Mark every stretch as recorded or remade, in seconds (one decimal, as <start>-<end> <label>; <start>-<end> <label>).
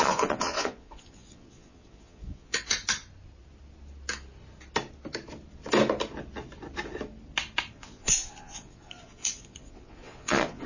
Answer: 0.0-2.8 remade; 2.8-7.7 recorded; 7.7-10.7 remade